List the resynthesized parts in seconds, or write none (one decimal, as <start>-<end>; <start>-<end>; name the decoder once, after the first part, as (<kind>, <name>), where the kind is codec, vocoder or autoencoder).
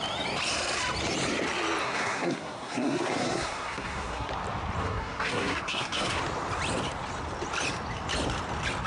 1.8-4.3 (codec, SNAC); 4.8-6.2